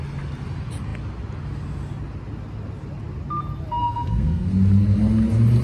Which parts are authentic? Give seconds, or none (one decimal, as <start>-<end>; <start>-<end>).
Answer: 0.0-3.8; 4.5-5.6